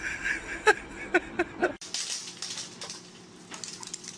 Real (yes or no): yes